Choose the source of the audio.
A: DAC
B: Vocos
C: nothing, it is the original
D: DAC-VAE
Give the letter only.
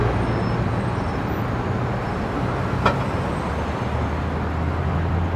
C